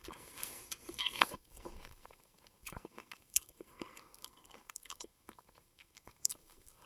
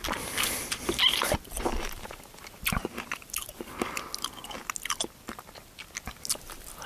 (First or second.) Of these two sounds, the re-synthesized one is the first